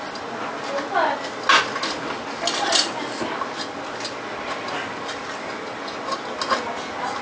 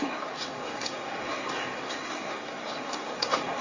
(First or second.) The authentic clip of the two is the first